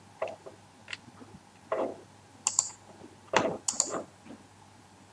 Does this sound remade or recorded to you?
recorded